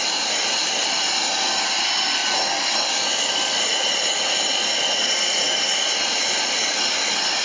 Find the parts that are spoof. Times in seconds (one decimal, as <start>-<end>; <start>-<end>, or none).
none